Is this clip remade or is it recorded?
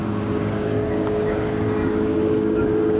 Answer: remade